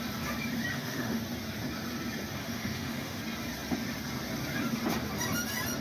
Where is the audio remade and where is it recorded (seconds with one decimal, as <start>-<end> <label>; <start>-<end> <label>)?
0.0-0.7 recorded; 0.7-1.2 remade; 1.2-2.4 recorded; 2.4-3.2 remade; 3.2-5.8 recorded